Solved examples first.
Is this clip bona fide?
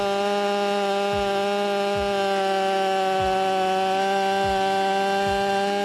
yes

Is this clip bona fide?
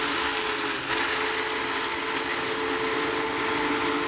yes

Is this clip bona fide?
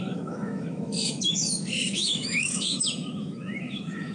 no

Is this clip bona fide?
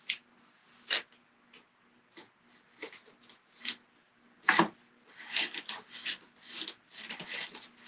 yes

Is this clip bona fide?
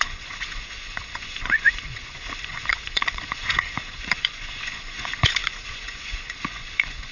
no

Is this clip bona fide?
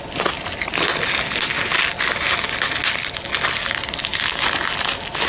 yes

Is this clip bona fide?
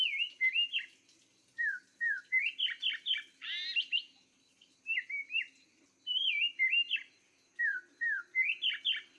yes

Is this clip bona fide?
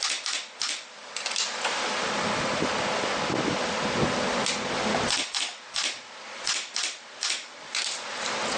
yes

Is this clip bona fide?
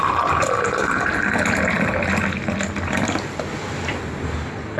yes